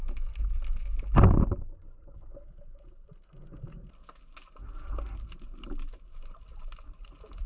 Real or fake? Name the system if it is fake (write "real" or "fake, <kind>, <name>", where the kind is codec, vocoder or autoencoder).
real